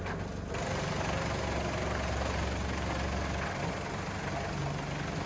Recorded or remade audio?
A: recorded